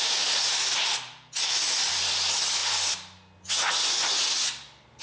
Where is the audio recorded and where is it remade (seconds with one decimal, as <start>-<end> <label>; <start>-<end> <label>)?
0.0-5.0 recorded